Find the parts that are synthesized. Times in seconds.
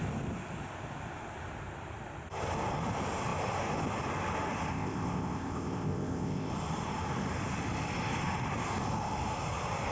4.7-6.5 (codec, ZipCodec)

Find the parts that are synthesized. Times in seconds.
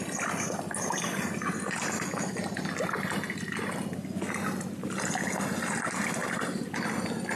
none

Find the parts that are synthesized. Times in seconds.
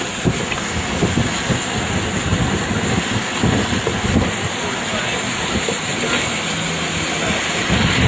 none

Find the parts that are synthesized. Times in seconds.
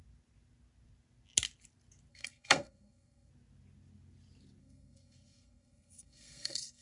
2.1-3.3 (codec, SNAC); 4.6-6.8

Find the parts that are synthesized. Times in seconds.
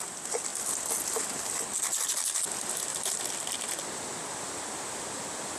none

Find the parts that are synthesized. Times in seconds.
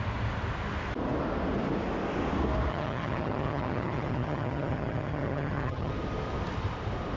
2.7-5.9 (vocoder, HiFi-GAN)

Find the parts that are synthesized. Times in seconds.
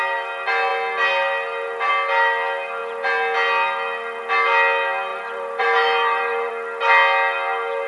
5.1-6.5 (vocoder, BigVGAN v2)